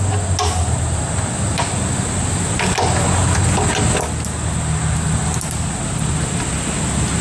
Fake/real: real